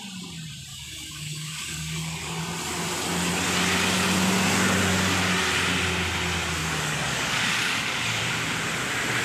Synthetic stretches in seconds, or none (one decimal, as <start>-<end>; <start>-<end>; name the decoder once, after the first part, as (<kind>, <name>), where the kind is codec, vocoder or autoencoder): 0.7-2.4 (codec, DAC); 6.6-8.2